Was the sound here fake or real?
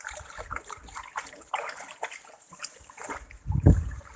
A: real